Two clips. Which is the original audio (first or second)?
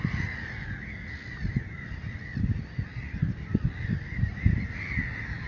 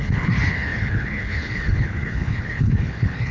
first